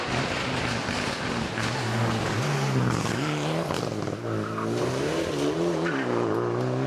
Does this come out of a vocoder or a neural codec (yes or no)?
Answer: no